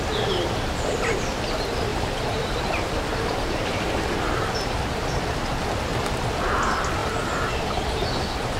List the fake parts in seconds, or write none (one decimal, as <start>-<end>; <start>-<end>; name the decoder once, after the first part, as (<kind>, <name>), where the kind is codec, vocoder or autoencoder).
1.9-2.7 (vocoder, BigVGAN v2); 3.1-5.5; 5.9-6.5; 7.0-8.1